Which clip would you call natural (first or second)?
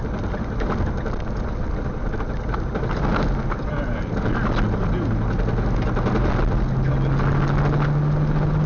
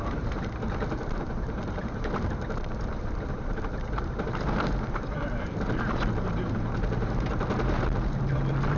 first